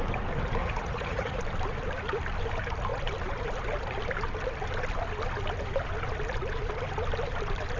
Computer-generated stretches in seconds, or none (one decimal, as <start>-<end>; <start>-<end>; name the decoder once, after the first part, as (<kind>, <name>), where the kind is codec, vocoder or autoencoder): 0.6-1.4 (vocoder, Vocos)